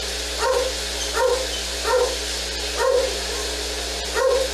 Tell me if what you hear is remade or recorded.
recorded